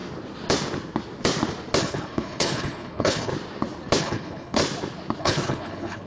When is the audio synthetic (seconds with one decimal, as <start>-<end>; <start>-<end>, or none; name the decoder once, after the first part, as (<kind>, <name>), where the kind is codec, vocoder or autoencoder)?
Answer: 1.8-3.3 (codec, HILCodec); 4.0-4.6; 5.2-6.1